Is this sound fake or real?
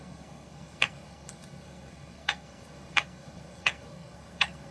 fake